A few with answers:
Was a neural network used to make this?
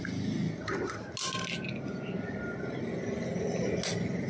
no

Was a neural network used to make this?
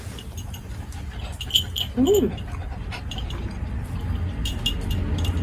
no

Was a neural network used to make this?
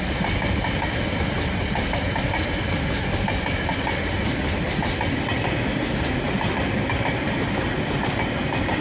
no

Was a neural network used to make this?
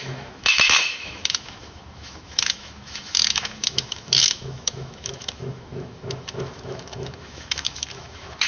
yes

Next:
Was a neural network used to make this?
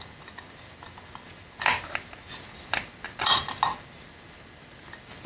no